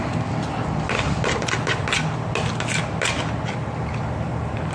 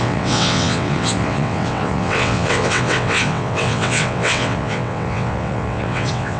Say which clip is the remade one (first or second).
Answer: second